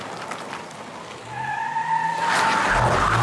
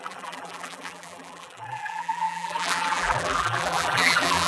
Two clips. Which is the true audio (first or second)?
first